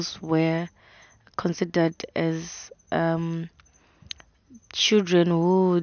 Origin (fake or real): real